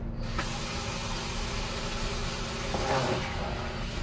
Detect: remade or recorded recorded